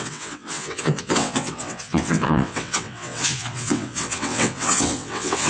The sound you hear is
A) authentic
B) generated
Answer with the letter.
B